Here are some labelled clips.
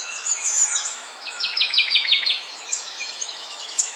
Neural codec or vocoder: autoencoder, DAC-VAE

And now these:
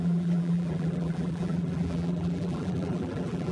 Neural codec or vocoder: vocoder, BigVGAN v2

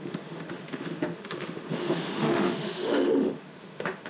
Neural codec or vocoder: autoencoder, DAC-VAE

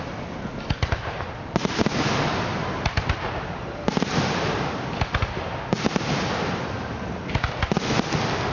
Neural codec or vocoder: none